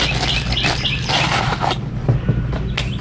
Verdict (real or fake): real